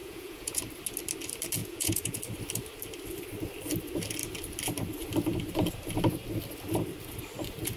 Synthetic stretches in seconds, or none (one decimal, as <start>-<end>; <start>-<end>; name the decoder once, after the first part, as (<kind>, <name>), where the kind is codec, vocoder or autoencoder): 0.0-0.6 (vocoder, Vocos); 1.6-2.2